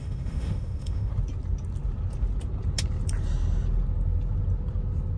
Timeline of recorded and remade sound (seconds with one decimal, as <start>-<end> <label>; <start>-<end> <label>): 0.0-1.1 remade; 1.1-5.2 recorded